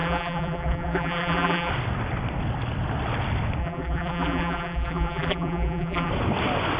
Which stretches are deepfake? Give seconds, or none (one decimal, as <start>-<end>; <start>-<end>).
0.0-1.7; 3.6-6.1